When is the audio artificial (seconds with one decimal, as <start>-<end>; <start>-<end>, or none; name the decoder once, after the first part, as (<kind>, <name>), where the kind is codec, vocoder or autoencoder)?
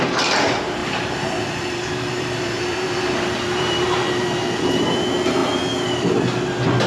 0.8-4.9 (vocoder, BigVGAN v2)